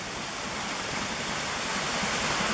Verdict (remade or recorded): recorded